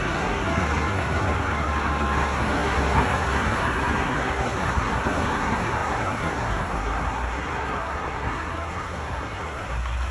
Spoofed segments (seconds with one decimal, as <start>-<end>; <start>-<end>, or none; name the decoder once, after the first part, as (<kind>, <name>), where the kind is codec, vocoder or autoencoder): 0.0-10.1 (codec, SNAC)